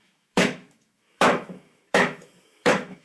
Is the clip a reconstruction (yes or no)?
yes